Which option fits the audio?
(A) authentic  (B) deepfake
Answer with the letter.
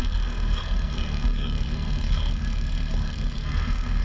B